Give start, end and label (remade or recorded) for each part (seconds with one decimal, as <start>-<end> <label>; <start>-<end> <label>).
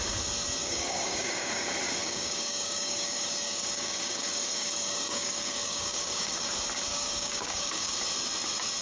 0.0-0.6 recorded; 0.6-1.5 remade; 1.5-2.0 recorded; 2.0-6.5 remade; 6.5-6.9 recorded; 6.9-7.9 remade; 7.9-8.8 recorded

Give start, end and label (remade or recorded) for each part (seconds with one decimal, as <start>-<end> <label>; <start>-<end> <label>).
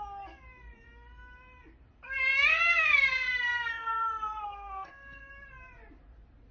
0.0-2.5 recorded; 2.5-5.3 remade; 5.3-6.5 recorded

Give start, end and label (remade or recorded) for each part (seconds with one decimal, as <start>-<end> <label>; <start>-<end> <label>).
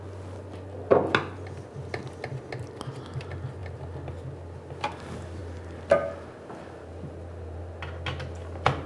0.0-3.6 recorded; 3.6-4.1 remade; 4.1-5.4 recorded; 5.4-7.7 remade; 7.7-8.9 recorded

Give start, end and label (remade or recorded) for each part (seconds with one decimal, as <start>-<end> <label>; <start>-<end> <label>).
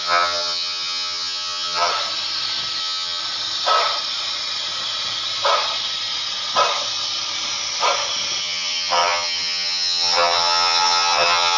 0.0-1.9 remade; 1.9-2.8 recorded; 2.8-3.2 remade; 3.2-8.4 recorded; 8.4-11.6 remade